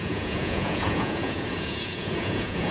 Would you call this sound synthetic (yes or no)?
yes